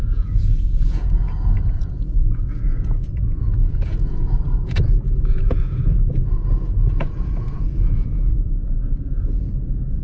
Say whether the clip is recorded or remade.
remade